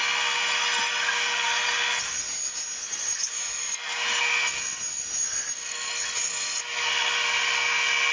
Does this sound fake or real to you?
real